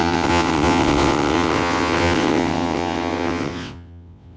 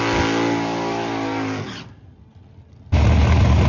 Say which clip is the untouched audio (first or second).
second